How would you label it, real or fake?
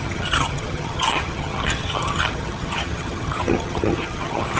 fake